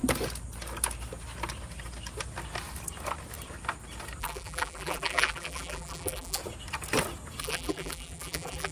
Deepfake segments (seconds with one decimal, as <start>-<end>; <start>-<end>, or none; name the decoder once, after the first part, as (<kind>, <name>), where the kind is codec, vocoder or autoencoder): 4.2-6.4 (vocoder, BigVGAN v2); 7.4-8.7